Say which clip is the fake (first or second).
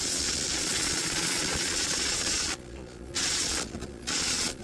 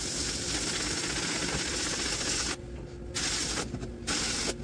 first